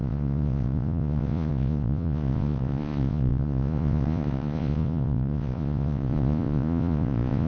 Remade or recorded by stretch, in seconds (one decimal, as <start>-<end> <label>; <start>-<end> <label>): 0.0-7.5 remade